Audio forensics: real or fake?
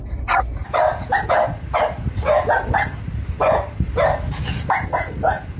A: real